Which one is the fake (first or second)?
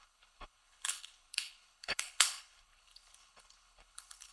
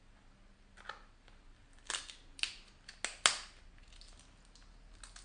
first